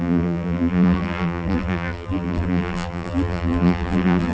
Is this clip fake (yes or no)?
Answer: yes